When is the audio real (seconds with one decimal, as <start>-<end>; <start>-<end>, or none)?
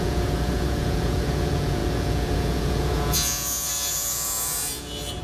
none